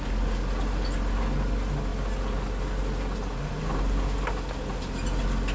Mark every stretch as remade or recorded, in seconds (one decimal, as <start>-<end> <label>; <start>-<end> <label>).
0.0-5.5 recorded